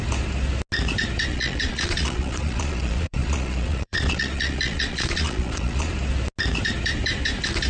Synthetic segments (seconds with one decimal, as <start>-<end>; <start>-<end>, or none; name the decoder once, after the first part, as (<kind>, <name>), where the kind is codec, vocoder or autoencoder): 1.3-5.9 (vocoder, Vocos)